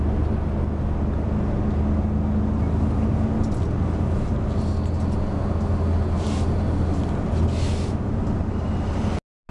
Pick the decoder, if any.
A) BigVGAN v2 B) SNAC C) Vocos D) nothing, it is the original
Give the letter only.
D